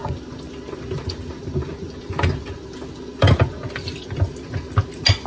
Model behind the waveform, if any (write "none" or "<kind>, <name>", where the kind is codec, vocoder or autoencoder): none